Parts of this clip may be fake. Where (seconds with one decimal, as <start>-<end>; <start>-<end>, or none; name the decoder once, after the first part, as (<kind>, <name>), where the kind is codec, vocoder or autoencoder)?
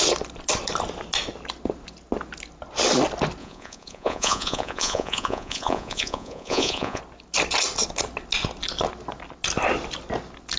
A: 3.4-7.0 (vocoder, Vocos)